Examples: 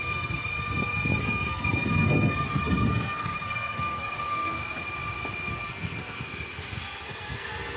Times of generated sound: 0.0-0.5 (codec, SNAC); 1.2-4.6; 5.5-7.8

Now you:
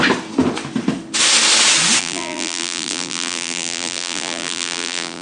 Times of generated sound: 2.0-5.2 (vocoder, BigVGAN v2)

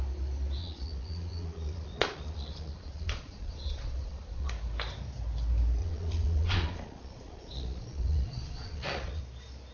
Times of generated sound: 0.6-4.5 (vocoder, Vocos); 5.8-9.2

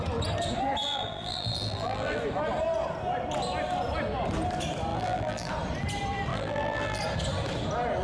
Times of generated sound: 0.8-2.2 (vocoder, BigVGAN v2); 4.9-5.5; 6.3-7.0

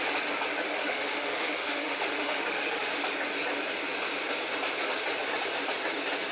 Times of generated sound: 0.8-2.9 (autoencoder, DAC-VAE)

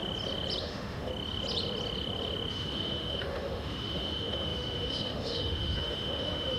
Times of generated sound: 0.6-1.1 (autoencoder, DAC-VAE); 2.5-6.6

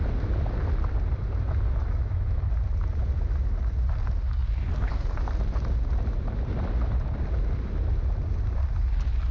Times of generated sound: 1.8-2.4 (autoencoder, DAC-VAE)

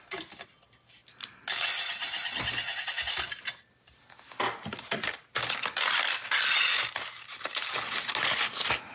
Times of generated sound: none